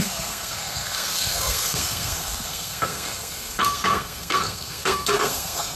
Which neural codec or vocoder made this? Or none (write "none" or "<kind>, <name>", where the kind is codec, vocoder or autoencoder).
codec, SNAC